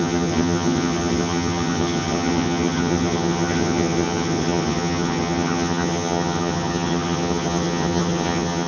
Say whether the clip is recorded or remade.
remade